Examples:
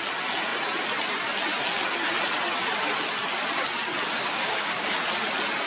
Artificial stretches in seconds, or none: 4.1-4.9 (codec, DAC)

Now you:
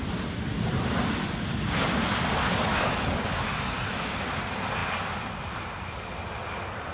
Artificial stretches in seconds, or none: 2.7-4.2 (codec, DAC)

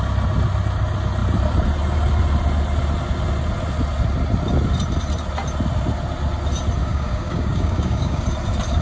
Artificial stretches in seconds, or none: 6.8-8.2 (codec, DAC)

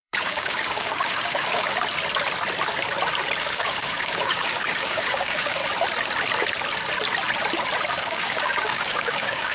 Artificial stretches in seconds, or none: 0.0-1.7 (codec, DAC); 3.4-5.6; 7.9-9.5

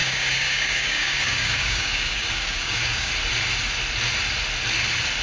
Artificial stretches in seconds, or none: 0.0-3.1 (codec, DAC)

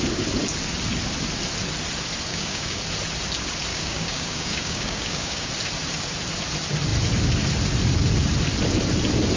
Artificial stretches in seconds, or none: 2.3-2.8 (codec, DAC); 3.7-5.5